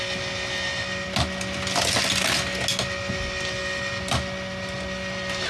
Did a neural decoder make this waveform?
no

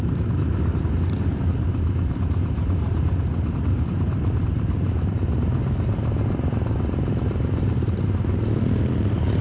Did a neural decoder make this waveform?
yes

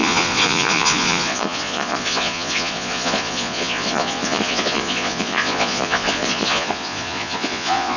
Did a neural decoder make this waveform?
yes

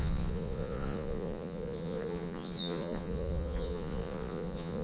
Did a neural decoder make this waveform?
yes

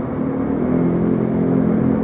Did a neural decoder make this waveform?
no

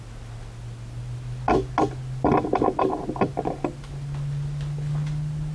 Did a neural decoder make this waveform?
no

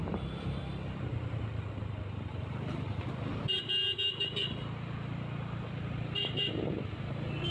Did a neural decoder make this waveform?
no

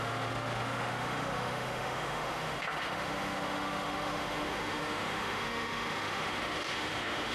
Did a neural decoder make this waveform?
yes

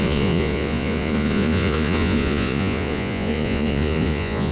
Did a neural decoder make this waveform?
yes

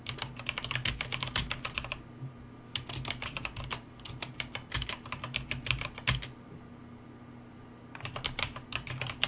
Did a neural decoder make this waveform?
no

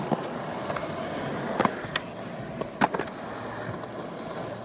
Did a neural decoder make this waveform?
no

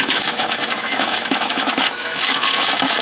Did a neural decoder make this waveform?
yes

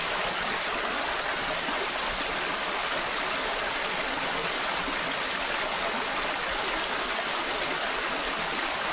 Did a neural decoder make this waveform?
no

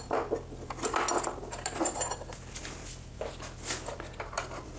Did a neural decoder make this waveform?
no